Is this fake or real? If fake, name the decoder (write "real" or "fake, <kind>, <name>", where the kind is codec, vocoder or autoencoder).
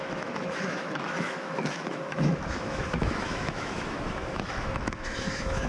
fake, autoencoder, DAC-VAE